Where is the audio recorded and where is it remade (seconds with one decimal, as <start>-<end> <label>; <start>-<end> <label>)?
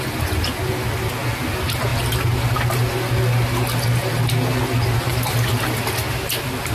0.0-6.7 recorded